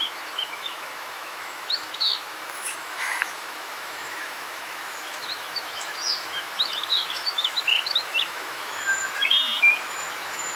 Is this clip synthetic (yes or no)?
yes